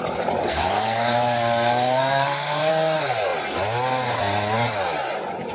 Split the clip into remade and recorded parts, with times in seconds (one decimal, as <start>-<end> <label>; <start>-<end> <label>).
0.0-0.4 recorded; 0.4-2.7 remade; 2.7-5.5 recorded